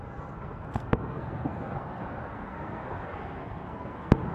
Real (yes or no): no